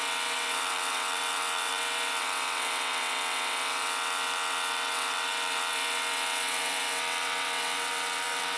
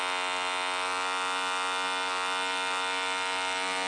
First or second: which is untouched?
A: second